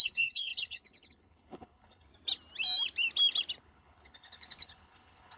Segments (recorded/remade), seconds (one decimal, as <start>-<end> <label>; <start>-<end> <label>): 0.0-2.1 remade; 2.1-3.6 recorded; 3.6-5.4 remade